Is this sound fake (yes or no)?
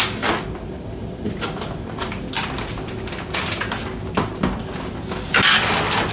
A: no